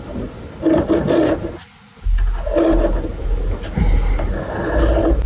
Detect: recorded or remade recorded